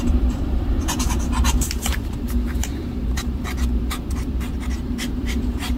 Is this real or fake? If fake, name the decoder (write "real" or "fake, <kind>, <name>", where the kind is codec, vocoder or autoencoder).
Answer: fake, vocoder, BigVGAN v2